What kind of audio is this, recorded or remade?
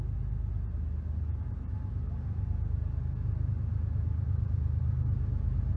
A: recorded